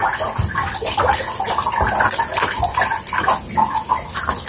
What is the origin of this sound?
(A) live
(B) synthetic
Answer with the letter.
A